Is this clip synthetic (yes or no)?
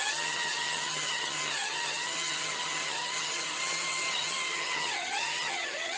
yes